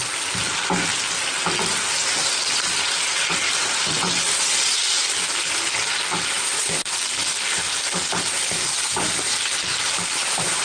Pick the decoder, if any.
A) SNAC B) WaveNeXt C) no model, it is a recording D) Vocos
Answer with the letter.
C